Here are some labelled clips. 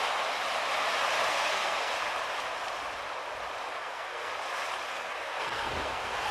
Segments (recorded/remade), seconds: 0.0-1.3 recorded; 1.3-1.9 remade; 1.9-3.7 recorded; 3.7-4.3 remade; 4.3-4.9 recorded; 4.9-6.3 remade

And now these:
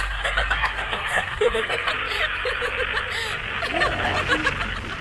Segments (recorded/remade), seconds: 0.0-1.9 remade; 1.9-5.0 recorded

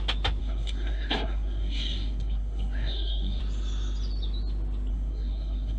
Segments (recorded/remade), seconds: 0.0-0.4 recorded; 0.4-3.4 remade; 3.4-4.9 recorded; 4.9-5.8 remade

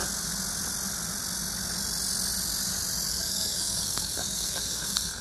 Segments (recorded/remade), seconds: 0.0-3.1 recorded; 3.1-5.2 remade